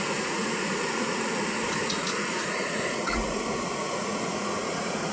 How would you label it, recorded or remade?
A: remade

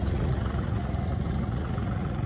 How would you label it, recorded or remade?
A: remade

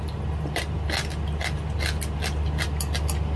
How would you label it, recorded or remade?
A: recorded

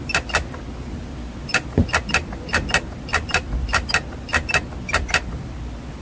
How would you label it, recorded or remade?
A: recorded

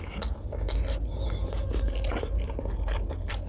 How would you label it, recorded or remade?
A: recorded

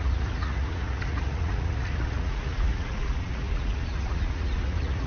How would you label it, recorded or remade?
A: remade